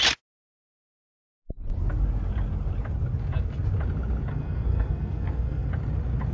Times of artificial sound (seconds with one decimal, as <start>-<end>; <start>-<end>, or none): 4.3-5.7